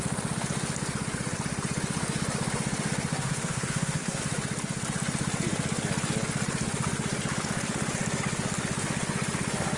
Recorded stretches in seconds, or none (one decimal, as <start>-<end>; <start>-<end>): 0.0-3.1; 4.2-9.8